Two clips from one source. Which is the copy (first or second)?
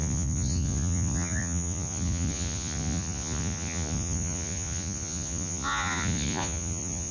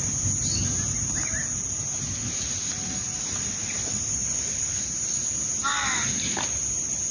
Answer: first